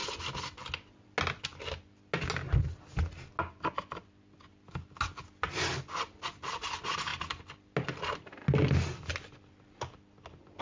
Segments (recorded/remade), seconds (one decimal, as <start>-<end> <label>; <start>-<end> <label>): 0.0-10.6 recorded

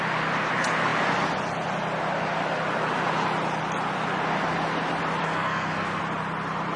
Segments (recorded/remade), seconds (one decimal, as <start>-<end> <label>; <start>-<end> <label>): 0.0-5.2 recorded; 5.2-6.0 remade; 6.0-6.8 recorded

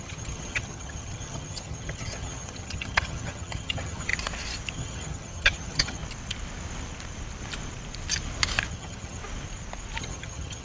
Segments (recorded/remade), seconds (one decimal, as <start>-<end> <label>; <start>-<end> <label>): 0.0-4.1 remade; 4.1-4.7 recorded; 4.7-6.0 remade; 6.0-8.7 recorded; 8.7-9.2 remade; 9.2-10.0 recorded; 10.0-10.6 remade

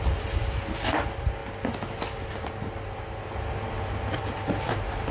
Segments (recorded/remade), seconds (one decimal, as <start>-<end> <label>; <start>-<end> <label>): 0.0-5.1 recorded

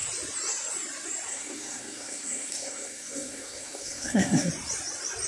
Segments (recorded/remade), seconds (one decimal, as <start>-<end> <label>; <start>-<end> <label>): 0.0-1.3 recorded; 1.3-4.5 remade; 4.5-5.3 recorded

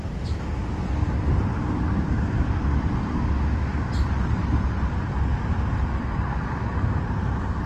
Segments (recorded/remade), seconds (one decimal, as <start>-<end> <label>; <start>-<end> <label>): 0.0-3.7 recorded; 3.7-4.3 remade; 4.3-7.7 recorded

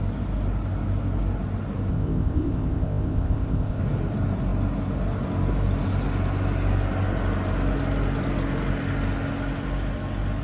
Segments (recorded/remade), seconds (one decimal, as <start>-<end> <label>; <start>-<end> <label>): 0.0-1.9 recorded; 1.9-3.8 remade; 3.8-10.4 recorded

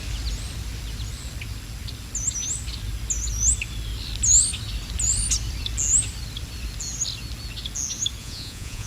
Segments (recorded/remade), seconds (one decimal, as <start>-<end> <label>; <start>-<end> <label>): 0.0-8.2 recorded; 8.2-8.9 remade